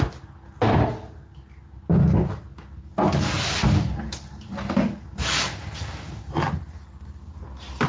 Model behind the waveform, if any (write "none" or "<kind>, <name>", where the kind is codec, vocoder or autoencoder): none